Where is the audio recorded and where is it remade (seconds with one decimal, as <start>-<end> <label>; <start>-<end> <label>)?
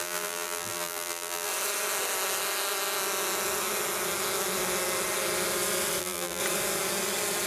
0.0-1.5 remade; 1.5-6.0 recorded; 6.0-6.4 remade; 6.4-7.5 recorded